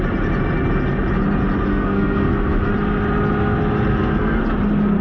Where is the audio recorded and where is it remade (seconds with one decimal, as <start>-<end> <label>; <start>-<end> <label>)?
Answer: 0.0-1.7 recorded; 1.7-2.7 remade; 2.7-3.9 recorded; 3.9-4.4 remade; 4.4-5.0 recorded